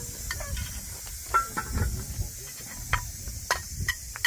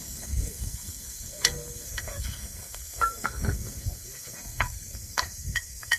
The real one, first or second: first